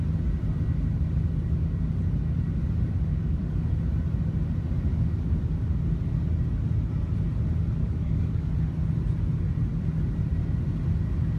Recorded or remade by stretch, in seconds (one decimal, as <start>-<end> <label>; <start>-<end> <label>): 0.0-3.1 recorded; 3.1-3.7 remade; 3.7-4.9 recorded; 4.9-5.4 remade; 5.4-7.8 recorded; 7.8-8.5 remade; 8.5-11.4 recorded